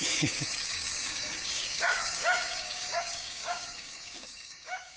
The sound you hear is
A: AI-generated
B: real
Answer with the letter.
A